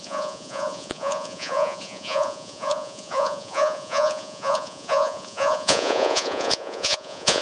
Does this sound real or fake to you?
fake